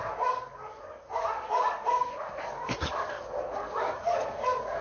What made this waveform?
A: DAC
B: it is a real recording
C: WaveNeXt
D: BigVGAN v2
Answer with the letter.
A